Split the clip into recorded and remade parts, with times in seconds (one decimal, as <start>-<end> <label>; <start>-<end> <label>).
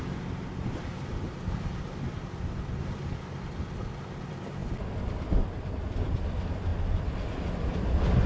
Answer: 0.0-0.9 remade; 0.9-2.2 recorded; 2.2-4.6 remade; 4.6-5.3 recorded; 5.3-6.7 remade; 6.7-7.5 recorded; 7.5-8.3 remade